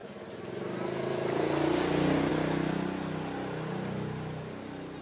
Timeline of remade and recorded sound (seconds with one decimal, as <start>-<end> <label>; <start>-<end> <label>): 0.0-5.0 recorded